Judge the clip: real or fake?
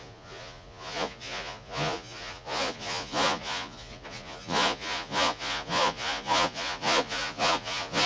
fake